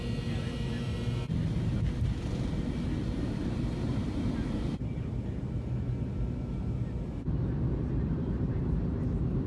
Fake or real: real